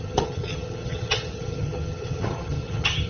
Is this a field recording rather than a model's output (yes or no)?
no